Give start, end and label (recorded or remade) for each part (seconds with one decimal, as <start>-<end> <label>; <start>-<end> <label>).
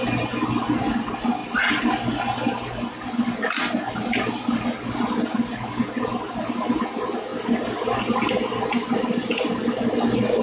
0.0-10.4 recorded